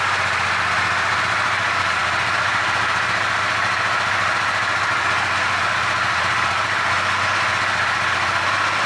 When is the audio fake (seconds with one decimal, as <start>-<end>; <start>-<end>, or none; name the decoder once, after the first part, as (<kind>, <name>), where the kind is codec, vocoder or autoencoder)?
none